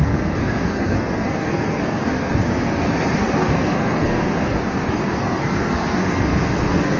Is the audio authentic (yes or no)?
no